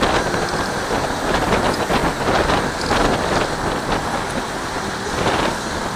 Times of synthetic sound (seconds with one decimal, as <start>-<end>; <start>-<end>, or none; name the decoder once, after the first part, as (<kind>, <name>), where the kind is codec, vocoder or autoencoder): none